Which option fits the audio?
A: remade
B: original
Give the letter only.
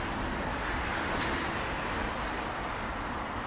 B